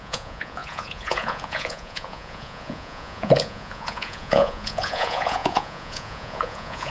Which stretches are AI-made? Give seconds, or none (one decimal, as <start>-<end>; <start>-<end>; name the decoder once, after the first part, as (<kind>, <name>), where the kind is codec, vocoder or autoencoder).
0.0-6.9 (vocoder, Vocos)